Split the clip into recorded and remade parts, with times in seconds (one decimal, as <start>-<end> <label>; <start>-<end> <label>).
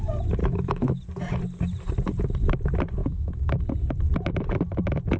0.0-0.4 recorded; 0.4-1.0 remade; 1.0-3.0 recorded; 3.0-3.6 remade; 3.6-5.2 recorded